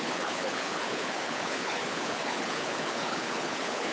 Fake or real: fake